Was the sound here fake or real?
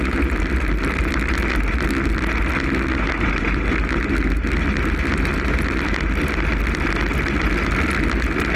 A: real